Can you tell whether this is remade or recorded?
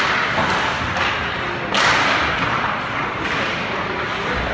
recorded